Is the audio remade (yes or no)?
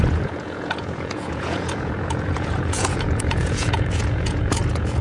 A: yes